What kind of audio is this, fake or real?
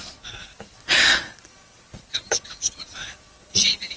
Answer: fake